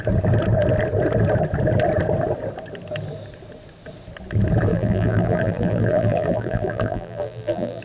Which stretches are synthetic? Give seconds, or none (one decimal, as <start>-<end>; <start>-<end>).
4.7-7.8